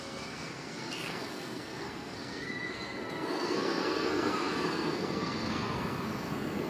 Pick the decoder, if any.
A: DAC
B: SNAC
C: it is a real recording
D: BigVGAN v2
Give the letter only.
B